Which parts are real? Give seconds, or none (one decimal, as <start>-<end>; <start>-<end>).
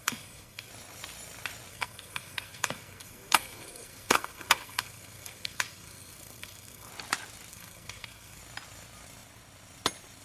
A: 0.7-1.7; 6.9-7.5; 8.4-10.2